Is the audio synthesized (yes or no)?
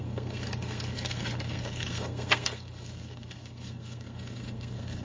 yes